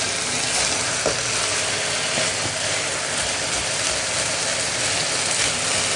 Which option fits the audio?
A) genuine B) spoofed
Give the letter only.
A